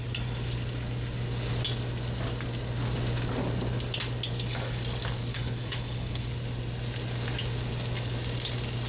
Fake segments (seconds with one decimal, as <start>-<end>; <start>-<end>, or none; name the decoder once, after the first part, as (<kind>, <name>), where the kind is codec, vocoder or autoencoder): 5.3-6.3 (codec, HILCodec)